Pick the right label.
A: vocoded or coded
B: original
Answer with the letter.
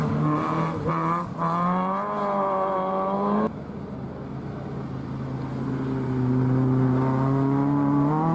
B